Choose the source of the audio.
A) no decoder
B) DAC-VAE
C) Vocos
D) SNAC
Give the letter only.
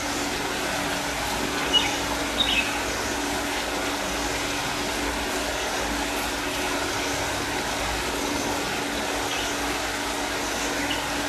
A